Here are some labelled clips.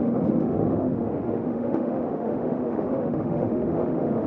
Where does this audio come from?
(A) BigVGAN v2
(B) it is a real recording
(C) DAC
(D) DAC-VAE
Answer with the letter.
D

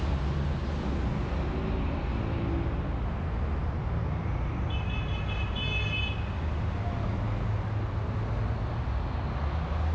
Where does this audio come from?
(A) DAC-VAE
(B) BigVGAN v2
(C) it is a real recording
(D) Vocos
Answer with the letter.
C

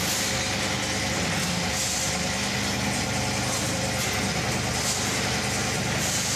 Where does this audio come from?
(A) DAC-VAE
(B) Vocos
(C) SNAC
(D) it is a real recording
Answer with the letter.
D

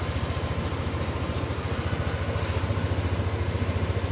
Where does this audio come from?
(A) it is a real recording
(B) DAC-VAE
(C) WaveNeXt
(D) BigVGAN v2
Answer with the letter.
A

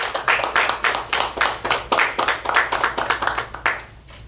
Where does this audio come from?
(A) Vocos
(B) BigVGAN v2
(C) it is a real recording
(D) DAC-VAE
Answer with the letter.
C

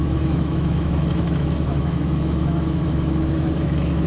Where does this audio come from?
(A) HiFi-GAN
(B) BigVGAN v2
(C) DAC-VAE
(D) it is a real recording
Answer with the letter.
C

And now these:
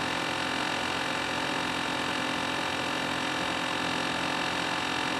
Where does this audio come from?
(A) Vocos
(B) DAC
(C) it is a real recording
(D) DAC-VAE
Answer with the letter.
C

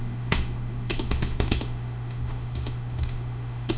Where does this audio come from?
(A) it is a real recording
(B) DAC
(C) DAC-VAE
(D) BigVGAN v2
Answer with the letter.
C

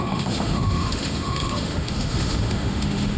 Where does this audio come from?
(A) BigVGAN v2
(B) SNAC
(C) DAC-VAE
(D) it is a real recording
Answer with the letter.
C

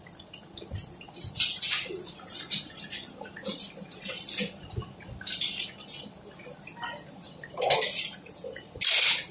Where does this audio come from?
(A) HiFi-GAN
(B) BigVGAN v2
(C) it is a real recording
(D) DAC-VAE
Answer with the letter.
C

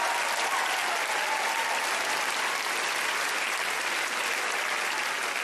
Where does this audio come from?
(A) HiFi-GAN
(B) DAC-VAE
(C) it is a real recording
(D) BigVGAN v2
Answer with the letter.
C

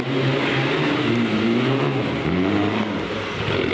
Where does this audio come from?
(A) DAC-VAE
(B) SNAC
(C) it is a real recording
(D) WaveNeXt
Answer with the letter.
C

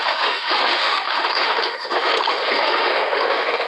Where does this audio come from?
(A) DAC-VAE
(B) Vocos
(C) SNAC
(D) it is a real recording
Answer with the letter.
A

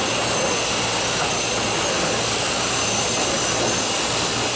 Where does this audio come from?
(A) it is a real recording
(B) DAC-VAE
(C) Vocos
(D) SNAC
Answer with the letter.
A